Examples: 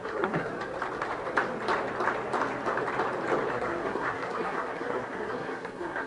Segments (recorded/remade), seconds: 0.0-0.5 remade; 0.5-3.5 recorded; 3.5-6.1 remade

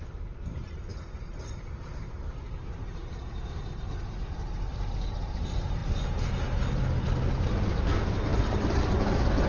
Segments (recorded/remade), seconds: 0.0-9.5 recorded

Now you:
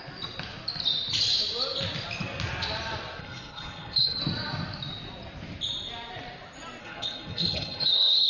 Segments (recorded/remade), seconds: 0.0-3.2 recorded; 3.2-4.2 remade; 4.2-6.8 recorded; 6.8-8.3 remade